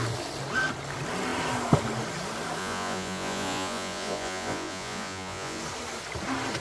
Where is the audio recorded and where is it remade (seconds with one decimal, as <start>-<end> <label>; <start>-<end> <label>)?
0.0-2.6 recorded; 2.6-5.6 remade; 5.6-6.6 recorded